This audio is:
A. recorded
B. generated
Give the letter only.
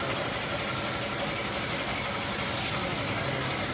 A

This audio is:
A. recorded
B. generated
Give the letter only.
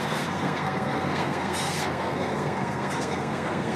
B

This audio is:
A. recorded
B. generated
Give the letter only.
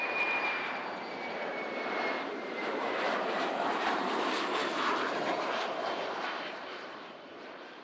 B